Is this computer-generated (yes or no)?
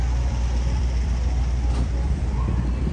yes